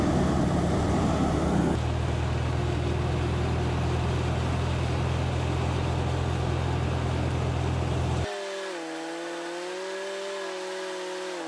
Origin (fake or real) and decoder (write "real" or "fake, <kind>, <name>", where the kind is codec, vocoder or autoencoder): real